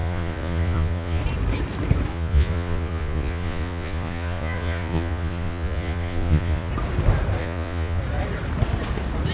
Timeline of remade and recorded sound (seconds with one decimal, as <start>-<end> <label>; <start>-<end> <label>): 0.0-1.2 remade; 1.2-2.1 recorded; 2.1-6.7 remade; 6.7-7.4 recorded; 7.4-8.0 remade; 8.0-9.3 recorded

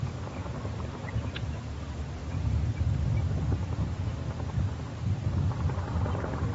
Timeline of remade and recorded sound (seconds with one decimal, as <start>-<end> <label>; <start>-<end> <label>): 0.0-6.5 recorded

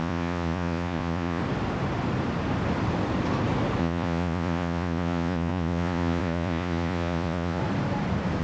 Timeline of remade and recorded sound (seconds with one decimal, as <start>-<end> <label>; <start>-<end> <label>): 0.0-1.4 remade; 1.4-3.8 recorded; 3.8-7.6 remade; 7.6-8.4 recorded

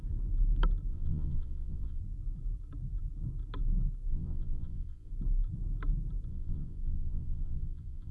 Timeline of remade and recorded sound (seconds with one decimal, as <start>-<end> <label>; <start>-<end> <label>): 0.0-0.9 recorded; 0.9-2.0 remade; 2.0-4.1 recorded; 4.1-5.1 remade; 5.1-6.3 recorded; 6.3-8.1 remade

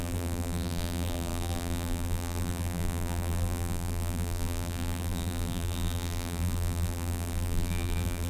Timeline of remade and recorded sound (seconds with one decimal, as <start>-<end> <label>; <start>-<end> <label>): 0.0-8.3 remade

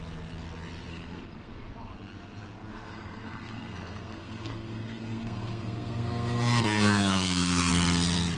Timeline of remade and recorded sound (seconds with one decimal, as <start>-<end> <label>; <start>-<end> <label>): 0.0-0.9 recorded; 0.9-1.7 remade; 1.7-2.7 recorded; 2.7-7.7 remade; 7.7-8.4 recorded